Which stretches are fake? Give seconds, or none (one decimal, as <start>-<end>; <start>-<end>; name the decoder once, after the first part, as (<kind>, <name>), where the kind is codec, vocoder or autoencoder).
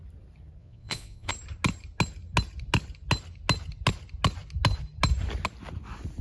0.6-1.3 (vocoder, Vocos)